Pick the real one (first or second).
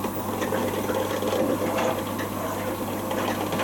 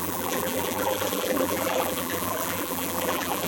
first